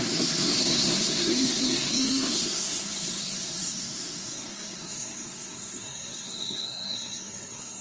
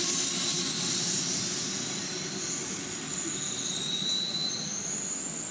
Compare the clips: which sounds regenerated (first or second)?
first